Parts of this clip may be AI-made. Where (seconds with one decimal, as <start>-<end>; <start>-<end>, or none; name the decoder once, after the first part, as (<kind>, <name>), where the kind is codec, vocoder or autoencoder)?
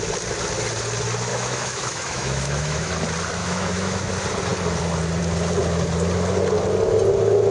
1.3-2.9 (autoencoder, DAC-VAE); 3.4-4.1